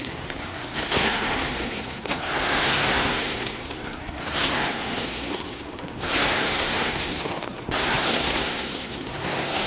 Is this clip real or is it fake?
fake